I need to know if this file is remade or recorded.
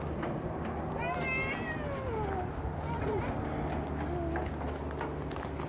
recorded